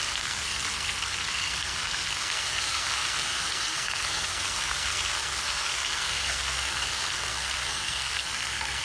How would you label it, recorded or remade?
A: remade